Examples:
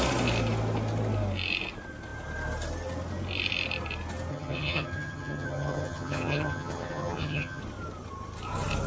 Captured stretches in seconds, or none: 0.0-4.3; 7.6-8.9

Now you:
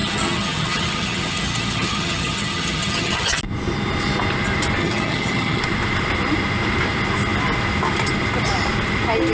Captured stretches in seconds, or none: 3.4-4.8; 5.6-9.3

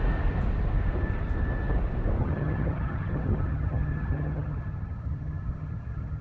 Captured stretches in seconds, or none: 0.0-2.2

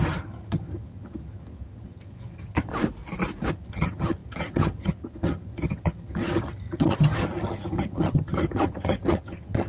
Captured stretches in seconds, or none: 2.7-3.5

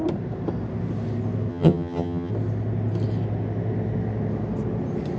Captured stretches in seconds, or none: 0.0-1.5; 2.3-5.2

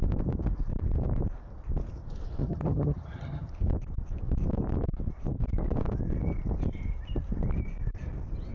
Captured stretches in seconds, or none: 0.0-2.4; 3.5-8.5